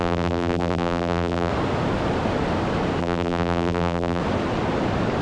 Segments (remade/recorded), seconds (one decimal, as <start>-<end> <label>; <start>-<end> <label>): 0.0-1.5 remade; 1.5-3.0 recorded; 3.0-4.2 remade; 4.2-5.2 recorded